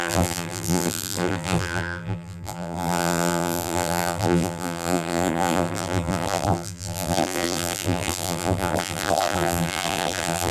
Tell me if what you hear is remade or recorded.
remade